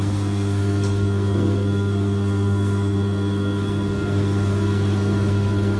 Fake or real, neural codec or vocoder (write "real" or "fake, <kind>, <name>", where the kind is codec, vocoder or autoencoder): fake, codec, SNAC